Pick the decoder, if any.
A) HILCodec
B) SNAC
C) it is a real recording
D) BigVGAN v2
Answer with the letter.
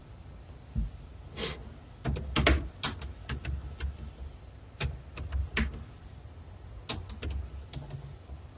C